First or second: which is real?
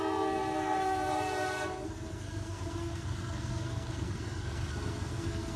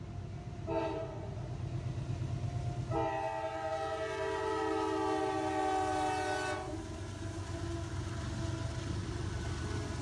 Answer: second